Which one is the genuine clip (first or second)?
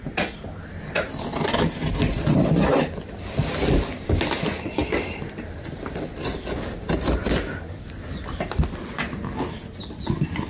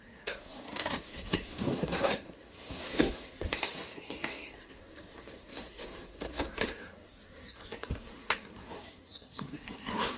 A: first